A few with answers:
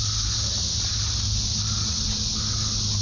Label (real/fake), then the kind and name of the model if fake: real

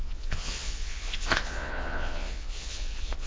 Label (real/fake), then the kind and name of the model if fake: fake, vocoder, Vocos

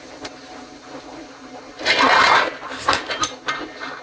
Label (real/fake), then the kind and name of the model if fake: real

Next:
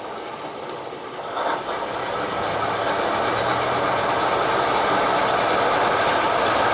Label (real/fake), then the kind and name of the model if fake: real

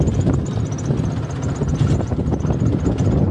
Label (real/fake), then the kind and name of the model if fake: real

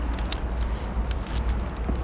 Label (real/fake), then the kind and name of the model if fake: real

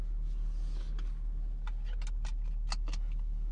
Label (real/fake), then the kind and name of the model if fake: real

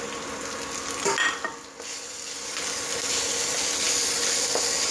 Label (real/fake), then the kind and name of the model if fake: real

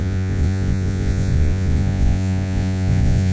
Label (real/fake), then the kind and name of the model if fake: fake, vocoder, Vocos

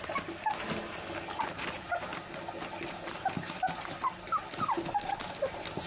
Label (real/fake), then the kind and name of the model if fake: real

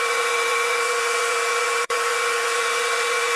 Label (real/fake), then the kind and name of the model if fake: fake, vocoder, Vocos